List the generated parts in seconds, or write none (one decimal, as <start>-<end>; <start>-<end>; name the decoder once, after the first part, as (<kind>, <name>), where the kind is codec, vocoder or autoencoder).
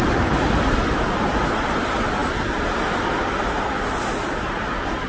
none